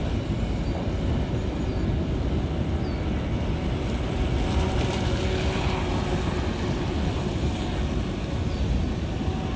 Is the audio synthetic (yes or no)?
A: no